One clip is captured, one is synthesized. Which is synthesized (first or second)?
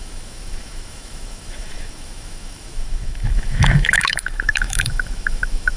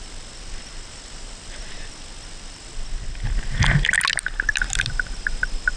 first